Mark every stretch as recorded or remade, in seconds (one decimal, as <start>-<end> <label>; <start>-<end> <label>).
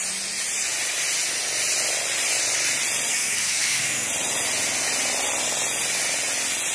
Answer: 0.0-3.1 recorded; 3.1-4.1 remade; 4.1-6.7 recorded